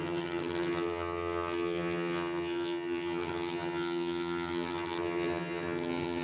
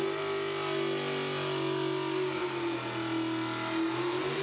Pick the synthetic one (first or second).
first